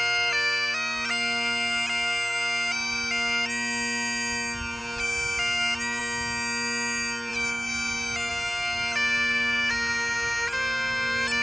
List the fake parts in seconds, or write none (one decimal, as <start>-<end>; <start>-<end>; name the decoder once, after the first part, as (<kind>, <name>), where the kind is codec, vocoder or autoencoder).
none